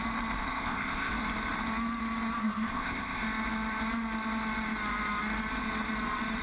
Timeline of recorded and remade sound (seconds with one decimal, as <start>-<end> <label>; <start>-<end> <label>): 0.0-0.4 recorded; 0.4-1.1 remade; 1.1-2.4 recorded; 2.4-3.2 remade; 3.2-6.4 recorded